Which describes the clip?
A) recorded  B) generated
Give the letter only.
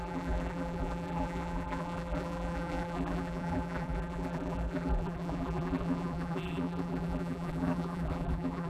B